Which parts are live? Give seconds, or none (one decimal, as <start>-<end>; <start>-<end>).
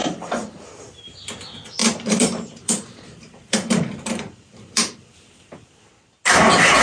0.8-1.8; 5.9-6.8